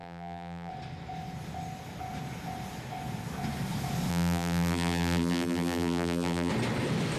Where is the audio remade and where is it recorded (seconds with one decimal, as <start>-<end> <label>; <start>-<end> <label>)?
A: 0.0-0.7 remade; 0.7-4.1 recorded; 4.1-6.5 remade; 6.5-7.2 recorded

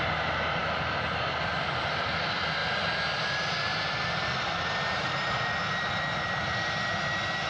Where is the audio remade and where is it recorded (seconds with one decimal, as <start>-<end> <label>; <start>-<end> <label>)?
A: 0.0-7.5 recorded

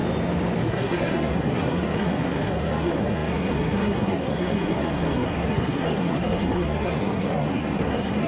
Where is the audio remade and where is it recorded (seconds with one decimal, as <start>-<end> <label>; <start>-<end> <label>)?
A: 0.0-0.6 recorded; 0.6-8.3 remade